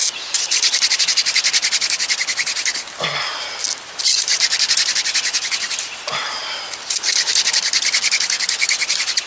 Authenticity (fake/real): real